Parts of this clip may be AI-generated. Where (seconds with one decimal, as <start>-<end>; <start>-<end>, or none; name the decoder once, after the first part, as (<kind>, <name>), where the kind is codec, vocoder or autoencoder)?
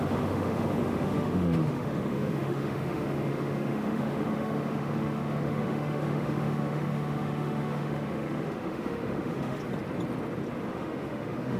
0.0-9.6 (autoencoder, DAC-VAE); 10.7-11.6